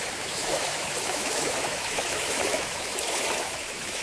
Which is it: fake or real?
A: fake